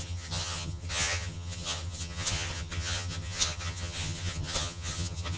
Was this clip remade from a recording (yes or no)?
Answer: yes